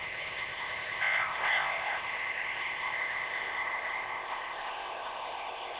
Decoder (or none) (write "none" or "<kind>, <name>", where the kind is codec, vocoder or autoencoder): codec, ZipCodec